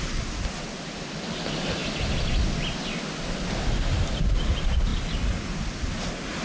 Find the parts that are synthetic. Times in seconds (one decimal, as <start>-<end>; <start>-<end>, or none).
none